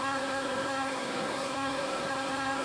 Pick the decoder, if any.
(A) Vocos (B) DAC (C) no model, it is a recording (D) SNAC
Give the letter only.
D